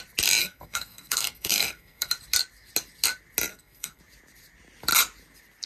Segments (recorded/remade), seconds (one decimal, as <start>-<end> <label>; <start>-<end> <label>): 0.0-0.4 recorded; 0.4-2.1 remade; 2.1-3.5 recorded; 3.5-4.0 remade; 4.0-5.7 recorded